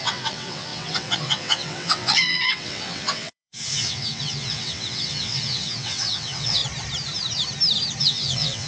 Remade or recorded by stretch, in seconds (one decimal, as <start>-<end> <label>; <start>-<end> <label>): 0.0-6.6 remade; 6.6-8.0 recorded; 8.0-8.7 remade